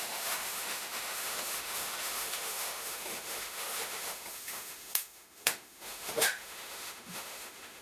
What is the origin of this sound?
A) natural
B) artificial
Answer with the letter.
B